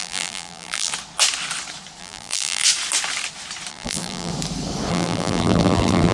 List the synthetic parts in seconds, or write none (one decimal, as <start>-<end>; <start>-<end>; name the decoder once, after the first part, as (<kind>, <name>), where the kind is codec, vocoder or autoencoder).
0.0-0.9 (vocoder, BigVGAN v2); 2.0-2.6; 3.7-4.3; 4.9-6.1